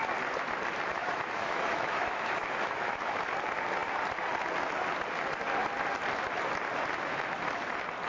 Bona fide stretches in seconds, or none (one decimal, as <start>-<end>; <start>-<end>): 0.0-0.9; 3.2-8.1